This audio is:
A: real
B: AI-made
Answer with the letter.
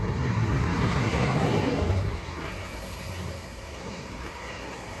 B